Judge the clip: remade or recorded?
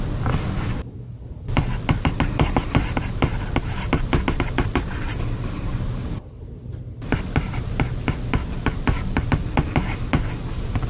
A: recorded